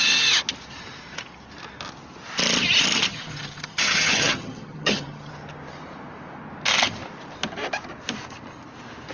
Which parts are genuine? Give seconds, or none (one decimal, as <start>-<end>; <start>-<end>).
0.0-3.1; 5.3-9.1